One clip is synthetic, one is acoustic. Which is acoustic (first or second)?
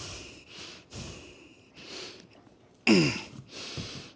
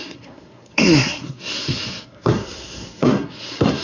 first